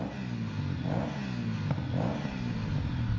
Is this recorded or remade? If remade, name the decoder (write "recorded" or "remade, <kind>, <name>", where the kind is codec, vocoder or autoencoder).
recorded